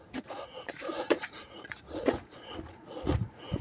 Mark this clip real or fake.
fake